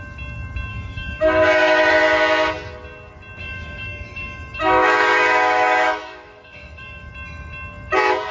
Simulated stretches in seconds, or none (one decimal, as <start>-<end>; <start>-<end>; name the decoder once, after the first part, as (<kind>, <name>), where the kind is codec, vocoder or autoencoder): 0.7-1.9 (autoencoder, DAC-VAE); 3.4-7.1